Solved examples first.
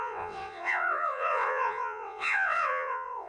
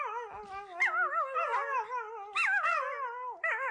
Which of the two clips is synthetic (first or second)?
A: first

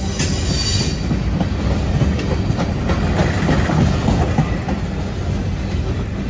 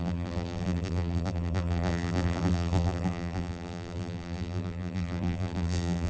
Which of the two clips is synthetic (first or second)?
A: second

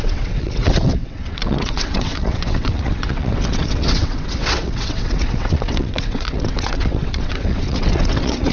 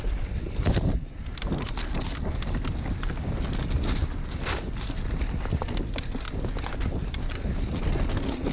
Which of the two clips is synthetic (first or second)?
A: first